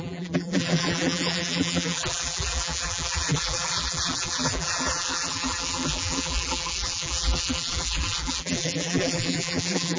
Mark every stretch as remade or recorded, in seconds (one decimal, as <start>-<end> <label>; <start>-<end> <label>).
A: 0.0-10.0 remade